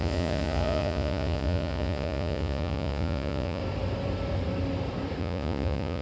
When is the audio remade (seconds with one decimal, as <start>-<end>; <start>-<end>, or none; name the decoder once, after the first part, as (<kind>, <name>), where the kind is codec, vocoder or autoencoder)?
0.0-3.6 (vocoder, Vocos); 5.2-6.0